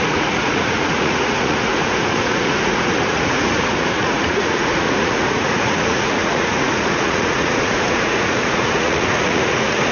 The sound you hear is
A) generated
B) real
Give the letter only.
A